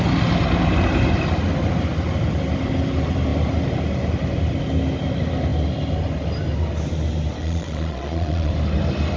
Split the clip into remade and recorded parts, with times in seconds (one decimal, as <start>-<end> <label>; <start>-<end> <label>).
0.0-7.4 recorded; 7.4-8.5 remade; 8.5-9.2 recorded